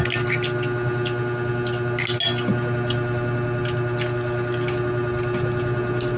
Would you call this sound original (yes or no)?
yes